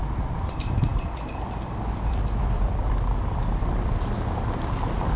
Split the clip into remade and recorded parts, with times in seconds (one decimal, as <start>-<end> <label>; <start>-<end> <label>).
0.0-0.9 recorded; 0.9-4.0 remade; 4.0-5.2 recorded